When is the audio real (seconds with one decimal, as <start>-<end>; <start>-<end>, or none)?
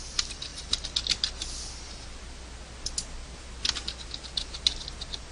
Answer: 0.0-5.3